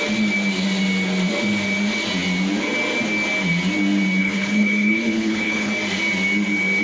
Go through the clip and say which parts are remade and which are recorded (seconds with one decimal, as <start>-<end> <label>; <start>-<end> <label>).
0.0-4.2 recorded; 4.2-5.7 remade; 5.7-6.8 recorded